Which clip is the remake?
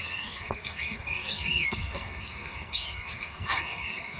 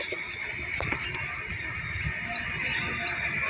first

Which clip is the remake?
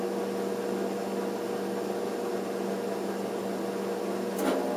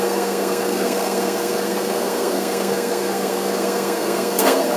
second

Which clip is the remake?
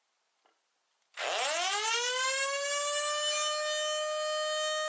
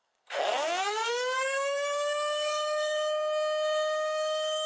second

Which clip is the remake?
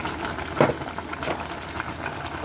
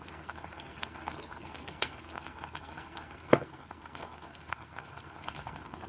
second